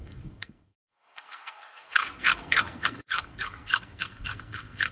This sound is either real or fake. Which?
fake